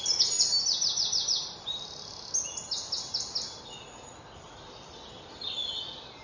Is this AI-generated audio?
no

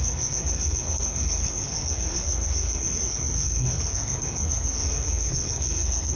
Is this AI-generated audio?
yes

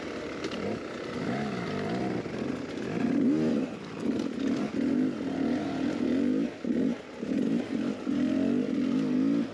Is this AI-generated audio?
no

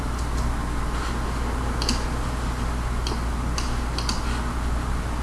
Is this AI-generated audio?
no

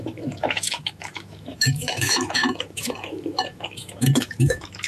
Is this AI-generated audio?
yes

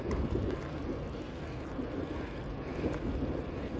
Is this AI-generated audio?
no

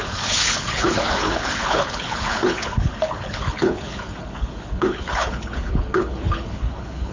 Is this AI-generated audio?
yes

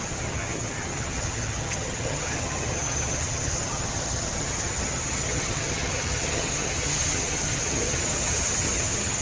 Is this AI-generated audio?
yes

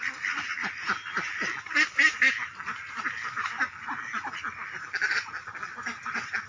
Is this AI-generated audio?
no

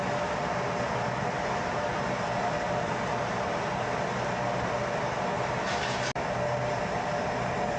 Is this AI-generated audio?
no